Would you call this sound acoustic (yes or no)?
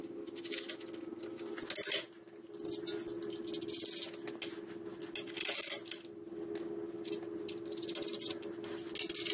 yes